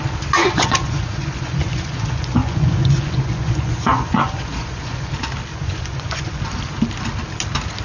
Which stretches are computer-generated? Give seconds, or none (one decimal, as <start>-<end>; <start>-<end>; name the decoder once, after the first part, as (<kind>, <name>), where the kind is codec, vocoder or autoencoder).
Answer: 0.4-5.1 (vocoder, Vocos); 5.5-6.4